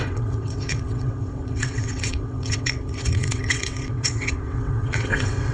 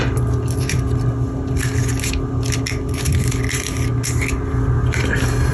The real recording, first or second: second